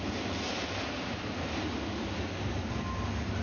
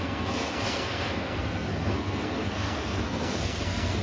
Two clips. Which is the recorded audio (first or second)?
first